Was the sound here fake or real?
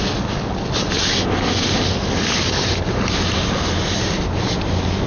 real